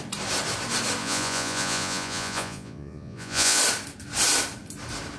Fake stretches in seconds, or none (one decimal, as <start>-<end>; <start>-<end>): 1.0-3.6